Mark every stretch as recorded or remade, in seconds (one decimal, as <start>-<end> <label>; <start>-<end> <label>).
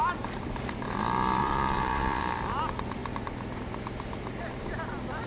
0.0-1.4 recorded; 1.4-2.2 remade; 2.2-5.3 recorded